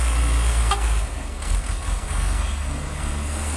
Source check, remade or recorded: remade